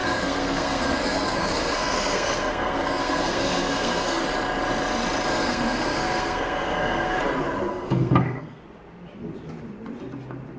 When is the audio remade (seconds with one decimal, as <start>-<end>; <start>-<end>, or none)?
0.0-4.2; 5.3-7.2; 7.7-8.6